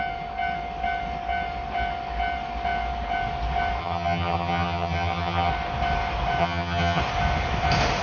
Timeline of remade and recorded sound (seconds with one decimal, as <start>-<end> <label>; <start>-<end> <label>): 0.0-3.8 recorded; 3.8-5.5 remade; 5.5-6.4 recorded; 6.4-7.0 remade; 7.0-8.0 recorded

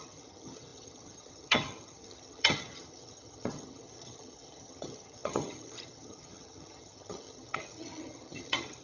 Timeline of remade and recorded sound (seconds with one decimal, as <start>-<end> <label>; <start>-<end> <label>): 0.0-8.8 remade

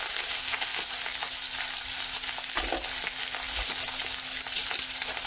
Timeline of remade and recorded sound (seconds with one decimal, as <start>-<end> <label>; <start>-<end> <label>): 0.0-5.3 recorded

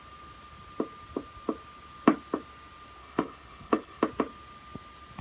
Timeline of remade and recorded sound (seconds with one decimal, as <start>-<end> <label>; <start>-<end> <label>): 0.0-3.0 recorded; 3.0-4.0 remade; 4.0-5.2 recorded

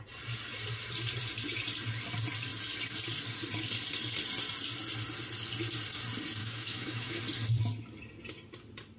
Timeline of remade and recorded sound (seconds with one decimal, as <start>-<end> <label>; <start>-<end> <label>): 0.0-6.4 recorded; 6.4-7.1 remade; 7.1-9.0 recorded